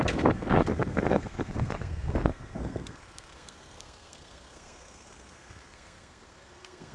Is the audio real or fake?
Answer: fake